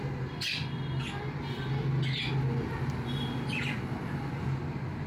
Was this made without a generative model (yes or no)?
yes